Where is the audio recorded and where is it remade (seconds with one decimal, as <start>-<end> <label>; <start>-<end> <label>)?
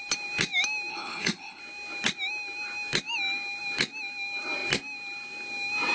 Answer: 0.0-0.9 recorded; 0.9-1.6 remade; 1.6-5.9 recorded